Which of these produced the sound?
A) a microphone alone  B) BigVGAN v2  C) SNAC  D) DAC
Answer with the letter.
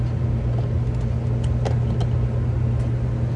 A